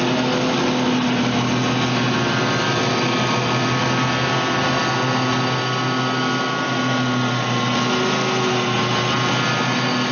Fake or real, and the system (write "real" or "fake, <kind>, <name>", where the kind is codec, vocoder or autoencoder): real